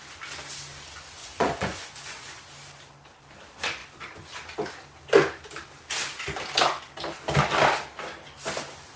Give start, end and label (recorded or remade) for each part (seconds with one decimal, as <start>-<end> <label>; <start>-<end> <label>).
0.0-1.2 recorded; 1.2-2.4 remade; 2.4-9.0 recorded